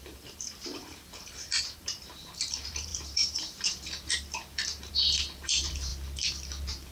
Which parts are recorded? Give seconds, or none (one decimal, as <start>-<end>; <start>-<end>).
5.9-6.9

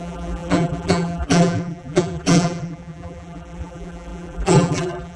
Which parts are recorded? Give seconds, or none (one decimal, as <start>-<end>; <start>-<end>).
none

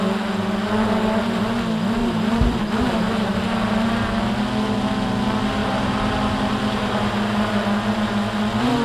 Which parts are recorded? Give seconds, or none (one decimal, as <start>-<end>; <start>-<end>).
0.0-2.0; 3.9-5.6; 7.4-8.8

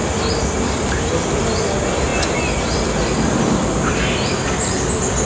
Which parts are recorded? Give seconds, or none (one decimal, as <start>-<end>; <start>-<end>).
1.0-5.2